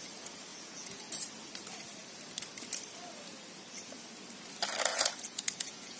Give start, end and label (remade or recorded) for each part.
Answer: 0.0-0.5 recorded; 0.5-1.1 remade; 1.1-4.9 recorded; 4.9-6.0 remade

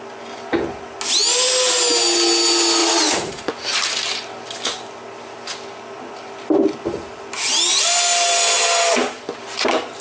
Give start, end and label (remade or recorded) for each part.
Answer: 0.0-2.8 recorded; 2.8-3.5 remade; 3.5-10.0 recorded

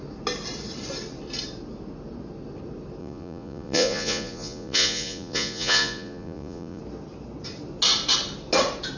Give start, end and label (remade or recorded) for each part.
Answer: 0.0-3.0 recorded; 3.0-6.8 remade; 6.8-9.0 recorded

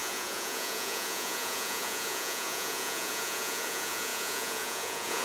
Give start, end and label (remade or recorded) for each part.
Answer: 0.0-5.2 remade

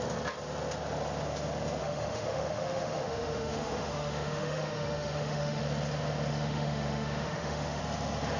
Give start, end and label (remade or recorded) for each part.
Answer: 0.0-1.8 recorded; 1.8-5.6 remade; 5.6-6.3 recorded; 6.3-7.8 remade; 7.8-8.4 recorded